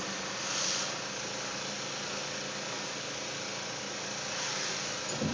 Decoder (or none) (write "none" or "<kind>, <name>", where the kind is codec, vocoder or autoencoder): none